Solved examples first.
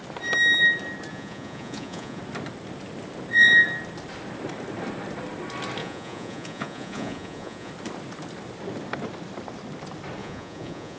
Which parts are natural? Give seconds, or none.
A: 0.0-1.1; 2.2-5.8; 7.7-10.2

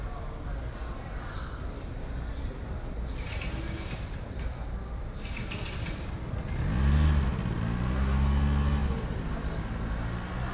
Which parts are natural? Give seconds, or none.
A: 0.0-10.5

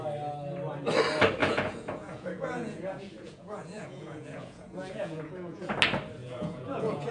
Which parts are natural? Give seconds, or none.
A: 0.0-1.4; 5.7-6.2

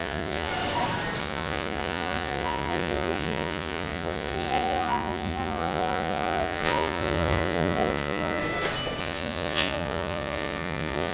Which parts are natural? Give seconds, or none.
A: 0.5-1.2; 8.4-9.0

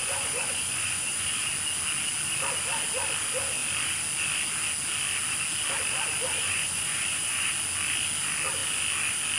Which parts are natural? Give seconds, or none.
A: 1.4-6.4; 7.5-9.4